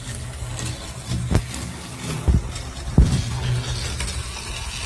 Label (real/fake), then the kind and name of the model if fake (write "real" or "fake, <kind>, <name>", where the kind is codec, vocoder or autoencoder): real